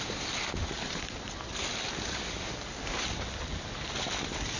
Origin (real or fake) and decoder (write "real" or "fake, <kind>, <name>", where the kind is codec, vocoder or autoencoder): real